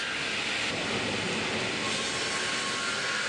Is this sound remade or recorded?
recorded